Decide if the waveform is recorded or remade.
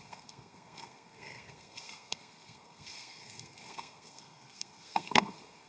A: remade